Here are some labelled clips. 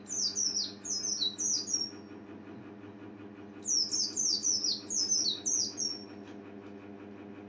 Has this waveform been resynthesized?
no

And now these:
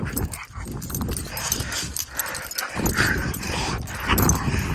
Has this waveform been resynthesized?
no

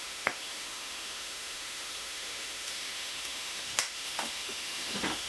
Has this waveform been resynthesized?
yes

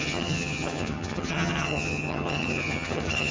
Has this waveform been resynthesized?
yes